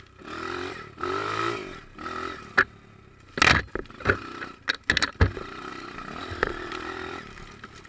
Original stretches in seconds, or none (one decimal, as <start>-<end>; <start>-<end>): 1.2-5.1; 5.7-6.2